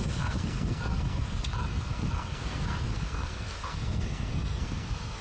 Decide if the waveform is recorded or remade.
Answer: remade